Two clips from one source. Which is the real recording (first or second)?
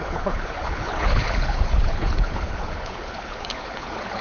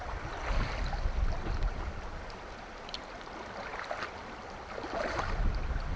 second